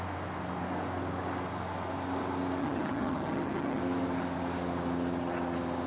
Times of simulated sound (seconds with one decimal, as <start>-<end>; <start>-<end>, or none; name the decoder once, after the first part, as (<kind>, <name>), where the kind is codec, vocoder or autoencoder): 2.6-3.8 (vocoder, HiFi-GAN)